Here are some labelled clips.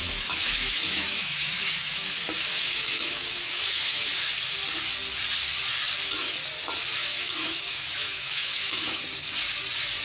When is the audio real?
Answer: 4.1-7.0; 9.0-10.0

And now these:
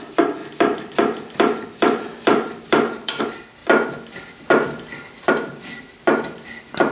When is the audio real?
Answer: 0.0-0.4; 3.2-6.9